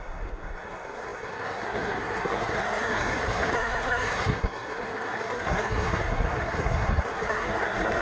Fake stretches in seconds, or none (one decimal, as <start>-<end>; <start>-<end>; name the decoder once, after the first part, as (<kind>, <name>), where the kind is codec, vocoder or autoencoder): 0.0-8.0 (codec, SNAC)